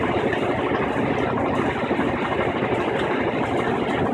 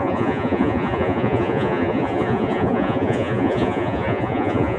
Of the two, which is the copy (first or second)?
second